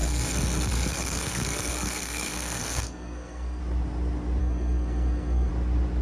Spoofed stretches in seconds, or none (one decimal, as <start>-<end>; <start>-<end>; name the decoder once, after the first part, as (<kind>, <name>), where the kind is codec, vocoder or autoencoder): 0.0-3.6 (codec, SNAC); 4.4-5.5

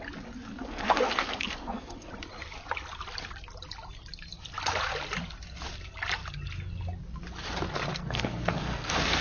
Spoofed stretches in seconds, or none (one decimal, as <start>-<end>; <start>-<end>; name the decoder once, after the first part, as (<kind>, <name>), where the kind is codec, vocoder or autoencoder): 0.5-2.1 (codec, SNAC); 7.9-9.2